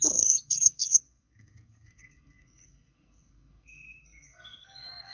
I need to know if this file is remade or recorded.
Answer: remade